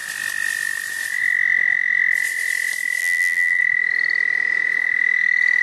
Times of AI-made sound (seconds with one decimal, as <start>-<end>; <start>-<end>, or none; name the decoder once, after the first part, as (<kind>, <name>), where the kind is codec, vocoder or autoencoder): 3.0-3.6 (vocoder, BigVGAN v2)